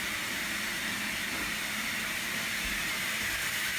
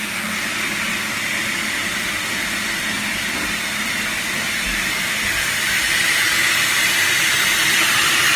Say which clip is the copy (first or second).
first